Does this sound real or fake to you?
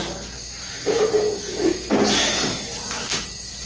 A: real